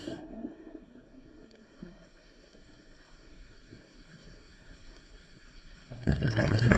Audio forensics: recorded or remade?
remade